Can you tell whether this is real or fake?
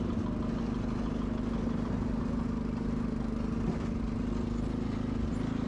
real